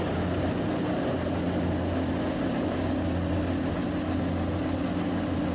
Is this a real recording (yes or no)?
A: yes